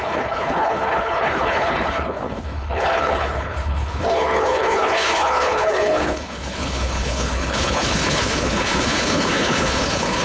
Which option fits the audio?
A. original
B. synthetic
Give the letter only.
B